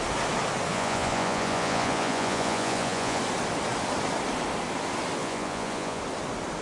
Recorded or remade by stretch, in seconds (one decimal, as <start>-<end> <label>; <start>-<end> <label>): 0.0-0.7 recorded; 0.7-3.2 remade; 3.2-5.2 recorded; 5.2-6.0 remade; 6.0-6.6 recorded